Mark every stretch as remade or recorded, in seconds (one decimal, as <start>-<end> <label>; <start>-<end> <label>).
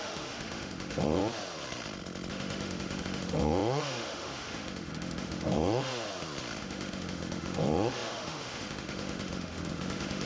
0.0-1.2 remade; 1.2-2.3 recorded; 2.3-5.9 remade; 5.9-6.6 recorded; 6.6-10.3 remade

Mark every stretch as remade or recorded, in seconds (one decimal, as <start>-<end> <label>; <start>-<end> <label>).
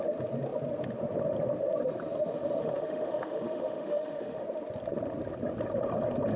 0.0-2.6 recorded; 2.6-4.4 remade; 4.4-6.4 recorded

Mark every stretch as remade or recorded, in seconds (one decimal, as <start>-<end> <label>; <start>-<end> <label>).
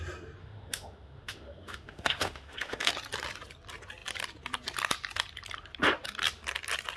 0.0-0.4 recorded; 0.4-2.9 remade; 2.9-7.0 recorded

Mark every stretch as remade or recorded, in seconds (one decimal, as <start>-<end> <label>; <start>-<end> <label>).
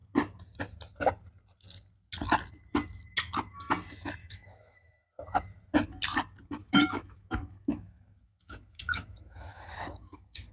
0.0-4.2 recorded; 4.2-5.1 remade; 5.1-6.6 recorded; 6.6-10.5 remade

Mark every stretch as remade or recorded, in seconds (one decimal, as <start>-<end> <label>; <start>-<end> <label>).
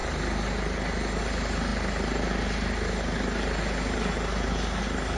0.0-5.2 recorded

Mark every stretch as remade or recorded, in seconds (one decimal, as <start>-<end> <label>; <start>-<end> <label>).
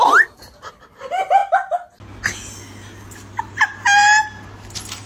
0.0-5.1 recorded